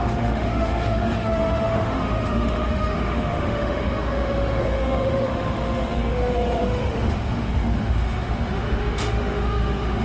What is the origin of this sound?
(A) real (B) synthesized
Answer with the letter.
B